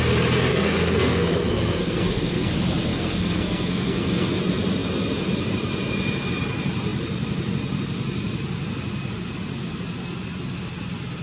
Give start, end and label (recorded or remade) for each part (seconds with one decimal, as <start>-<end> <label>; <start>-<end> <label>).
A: 0.0-0.5 recorded; 0.5-2.5 remade; 2.5-2.9 recorded; 2.9-4.3 remade; 4.3-11.2 recorded